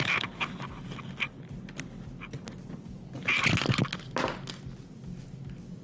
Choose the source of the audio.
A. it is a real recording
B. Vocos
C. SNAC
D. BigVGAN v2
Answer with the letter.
A